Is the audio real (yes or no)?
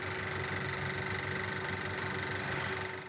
yes